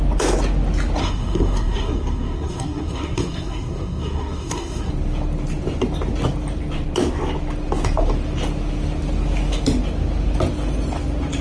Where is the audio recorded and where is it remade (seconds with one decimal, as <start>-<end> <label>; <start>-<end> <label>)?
0.0-1.0 recorded; 1.0-4.9 remade; 4.9-11.4 recorded